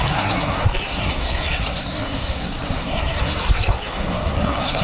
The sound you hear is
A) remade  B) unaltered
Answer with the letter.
A